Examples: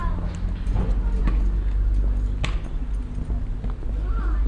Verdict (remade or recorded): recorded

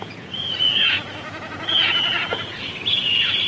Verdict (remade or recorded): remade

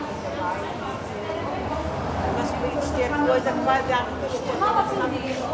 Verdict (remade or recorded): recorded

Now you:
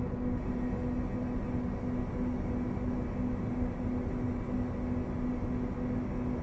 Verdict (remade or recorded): recorded